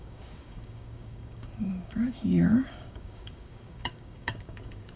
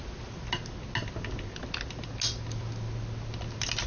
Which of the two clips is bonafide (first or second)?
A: second